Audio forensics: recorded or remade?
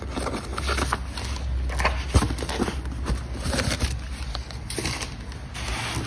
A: recorded